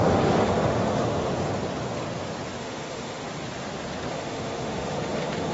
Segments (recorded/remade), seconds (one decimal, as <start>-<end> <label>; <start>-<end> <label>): 0.0-1.3 remade; 1.3-2.6 recorded; 2.6-3.2 remade; 3.2-4.1 recorded; 4.1-5.5 remade